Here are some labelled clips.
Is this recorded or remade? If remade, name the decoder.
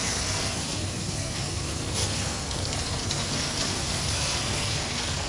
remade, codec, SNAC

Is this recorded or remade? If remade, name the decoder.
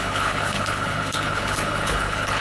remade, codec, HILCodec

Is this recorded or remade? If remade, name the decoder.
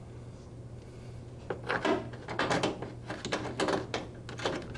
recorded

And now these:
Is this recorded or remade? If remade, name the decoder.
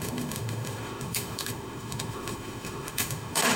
remade, autoencoder, DAC-VAE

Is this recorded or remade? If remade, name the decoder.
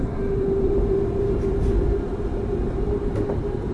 remade, vocoder, BigVGAN v2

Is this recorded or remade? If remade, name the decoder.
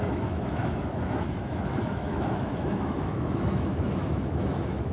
remade, autoencoder, DAC-VAE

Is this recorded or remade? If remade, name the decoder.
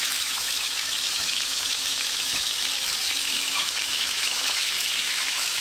remade, autoencoder, DAC-VAE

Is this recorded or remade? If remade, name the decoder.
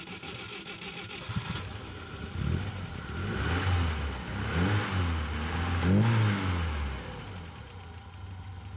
recorded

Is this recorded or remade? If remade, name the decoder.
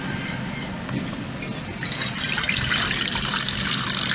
remade, vocoder, BigVGAN v2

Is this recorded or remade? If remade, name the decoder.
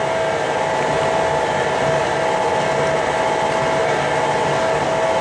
recorded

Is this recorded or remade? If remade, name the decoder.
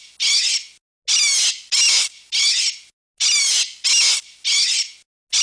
recorded